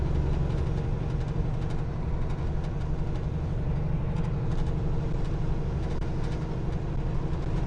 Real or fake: real